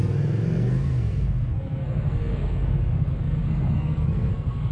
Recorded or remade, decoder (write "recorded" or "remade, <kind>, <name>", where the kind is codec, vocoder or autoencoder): remade, codec, SNAC